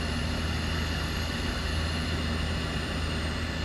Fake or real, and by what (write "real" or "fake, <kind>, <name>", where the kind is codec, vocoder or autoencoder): real